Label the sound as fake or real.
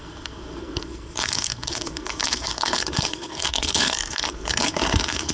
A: fake